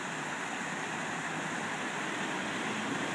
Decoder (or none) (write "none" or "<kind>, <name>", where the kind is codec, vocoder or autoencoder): none